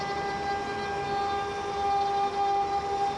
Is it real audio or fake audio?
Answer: real